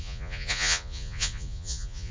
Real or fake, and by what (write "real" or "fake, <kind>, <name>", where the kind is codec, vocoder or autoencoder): fake, vocoder, Vocos